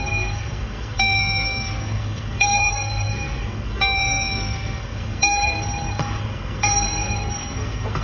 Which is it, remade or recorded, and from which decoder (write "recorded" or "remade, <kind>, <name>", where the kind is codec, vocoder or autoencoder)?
remade, codec, SNAC